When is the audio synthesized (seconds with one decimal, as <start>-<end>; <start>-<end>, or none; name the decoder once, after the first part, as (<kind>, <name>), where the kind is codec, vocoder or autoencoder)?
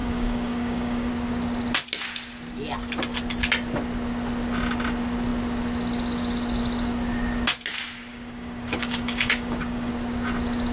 0.0-1.1 (codec, DAC); 8.1-9.9